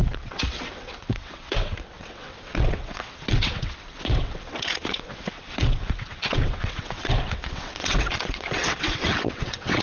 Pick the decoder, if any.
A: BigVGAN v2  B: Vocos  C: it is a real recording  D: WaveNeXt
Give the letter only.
D